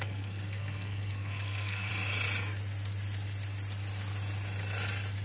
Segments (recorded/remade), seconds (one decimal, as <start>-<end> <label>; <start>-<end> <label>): 0.0-1.9 remade; 1.9-5.2 recorded